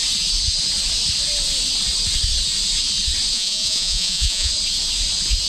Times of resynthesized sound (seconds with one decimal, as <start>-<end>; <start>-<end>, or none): 3.3-4.5